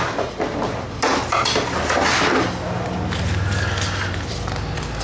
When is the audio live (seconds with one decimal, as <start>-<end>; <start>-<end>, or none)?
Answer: 0.0-5.0